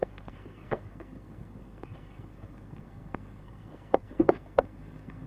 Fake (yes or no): yes